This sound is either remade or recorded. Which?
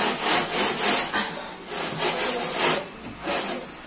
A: recorded